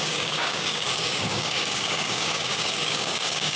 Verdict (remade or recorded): remade